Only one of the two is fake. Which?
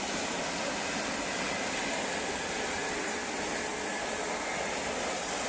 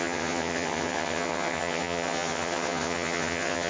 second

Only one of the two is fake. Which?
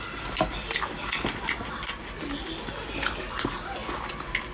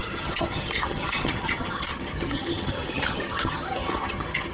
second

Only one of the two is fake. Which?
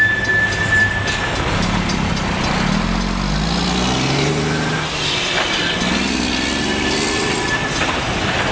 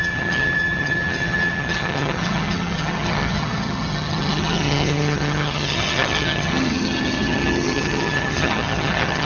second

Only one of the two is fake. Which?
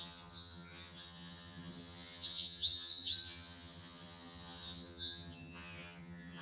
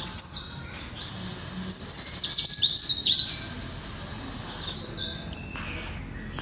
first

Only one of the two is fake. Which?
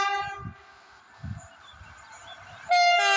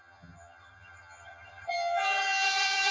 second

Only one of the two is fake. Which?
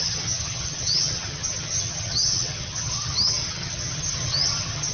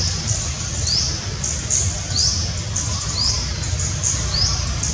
first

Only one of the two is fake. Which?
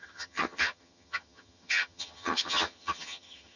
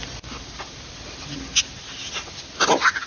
first